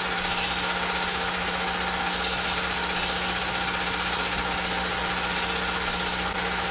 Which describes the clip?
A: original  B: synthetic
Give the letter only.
A